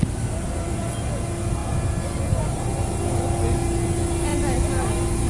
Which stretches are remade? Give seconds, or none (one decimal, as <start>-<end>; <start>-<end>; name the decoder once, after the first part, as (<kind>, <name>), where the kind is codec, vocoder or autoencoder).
none